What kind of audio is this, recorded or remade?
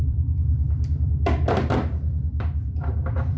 remade